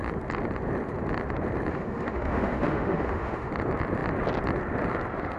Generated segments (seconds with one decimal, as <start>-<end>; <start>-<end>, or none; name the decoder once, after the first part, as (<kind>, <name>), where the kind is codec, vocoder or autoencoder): 1.7-3.5 (autoencoder, DAC-VAE)